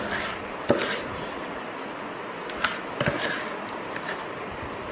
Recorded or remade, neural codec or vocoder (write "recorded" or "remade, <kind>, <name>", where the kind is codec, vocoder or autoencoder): recorded